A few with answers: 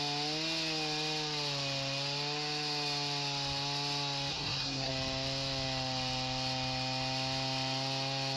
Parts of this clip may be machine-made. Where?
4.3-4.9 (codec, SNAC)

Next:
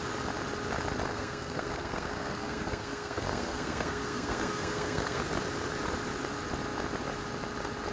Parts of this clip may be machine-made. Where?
1.1-5.2 (codec, SNAC)